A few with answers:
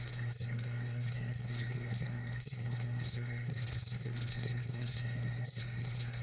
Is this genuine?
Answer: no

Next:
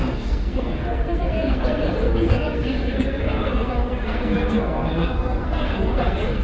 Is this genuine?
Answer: no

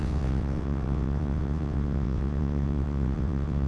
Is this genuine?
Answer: no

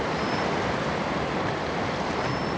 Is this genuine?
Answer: yes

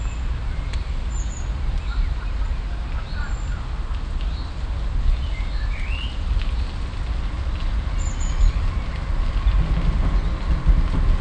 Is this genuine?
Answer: yes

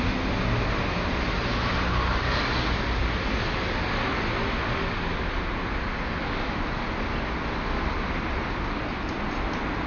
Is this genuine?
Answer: yes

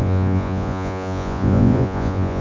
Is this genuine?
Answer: no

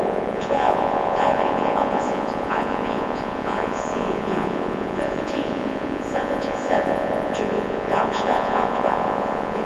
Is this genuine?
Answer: no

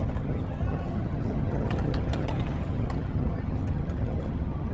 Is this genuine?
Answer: no